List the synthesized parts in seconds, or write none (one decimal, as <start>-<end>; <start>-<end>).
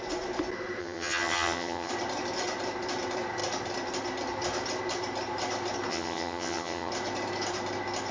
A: 0.8-1.9; 5.9-6.9